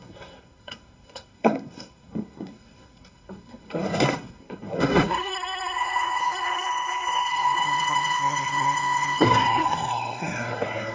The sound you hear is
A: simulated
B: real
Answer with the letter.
A